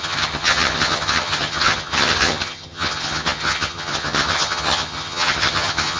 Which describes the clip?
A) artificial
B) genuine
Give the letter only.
A